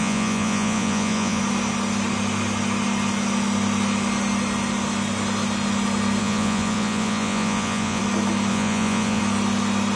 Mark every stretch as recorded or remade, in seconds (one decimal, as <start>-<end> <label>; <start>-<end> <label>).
0.0-1.4 remade; 1.4-6.2 recorded; 6.2-8.0 remade; 8.0-8.5 recorded; 8.5-9.2 remade; 9.2-10.0 recorded